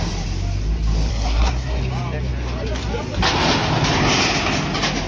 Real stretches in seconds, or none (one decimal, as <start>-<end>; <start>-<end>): 0.0-1.1; 1.8-5.1